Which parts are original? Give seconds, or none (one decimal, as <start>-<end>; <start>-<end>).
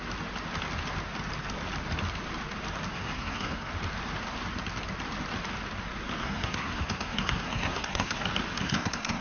0.0-2.9; 3.7-6.2; 8.2-8.6